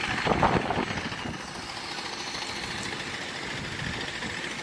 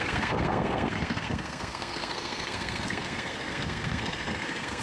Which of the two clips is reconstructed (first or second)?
second